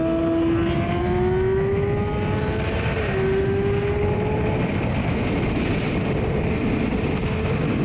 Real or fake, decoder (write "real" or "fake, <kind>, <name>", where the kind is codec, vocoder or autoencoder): real